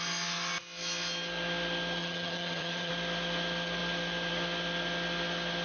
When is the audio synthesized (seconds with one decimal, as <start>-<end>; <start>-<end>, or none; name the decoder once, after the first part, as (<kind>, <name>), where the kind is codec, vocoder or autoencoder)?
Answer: 2.0-2.9 (vocoder, HiFi-GAN)